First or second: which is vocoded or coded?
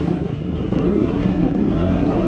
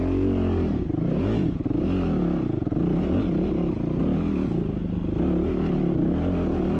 first